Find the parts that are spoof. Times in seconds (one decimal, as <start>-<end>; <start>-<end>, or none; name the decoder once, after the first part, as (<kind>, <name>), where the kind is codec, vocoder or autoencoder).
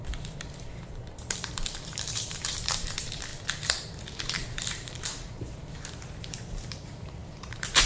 0.0-3.3 (vocoder, BigVGAN v2); 4.2-5.6; 6.2-7.9